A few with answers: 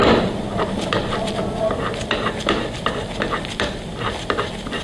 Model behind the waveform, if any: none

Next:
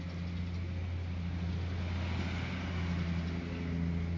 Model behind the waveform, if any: none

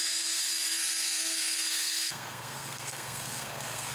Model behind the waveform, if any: codec, SNAC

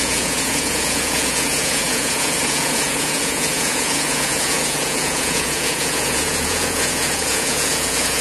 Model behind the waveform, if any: vocoder, Vocos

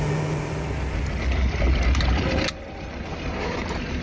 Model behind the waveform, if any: none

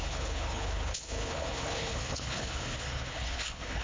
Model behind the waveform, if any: codec, HILCodec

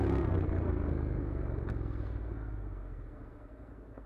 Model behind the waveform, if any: codec, SNAC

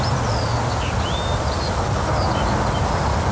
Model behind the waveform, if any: none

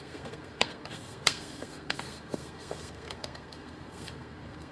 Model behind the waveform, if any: codec, SNAC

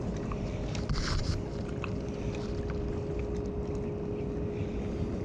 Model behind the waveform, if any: none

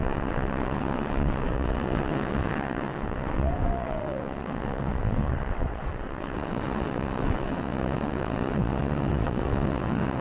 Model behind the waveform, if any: vocoder, WaveNeXt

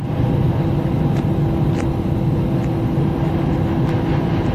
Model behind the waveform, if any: none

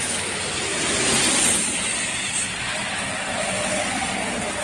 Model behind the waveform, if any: none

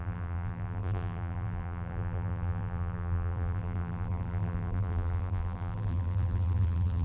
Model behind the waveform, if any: vocoder, BigVGAN v2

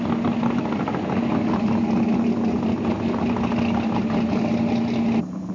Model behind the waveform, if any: none